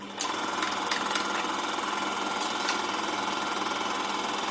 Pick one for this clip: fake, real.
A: real